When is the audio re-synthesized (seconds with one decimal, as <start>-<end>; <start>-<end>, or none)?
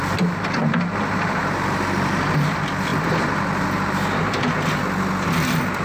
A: none